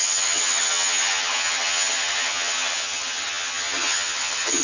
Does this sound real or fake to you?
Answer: fake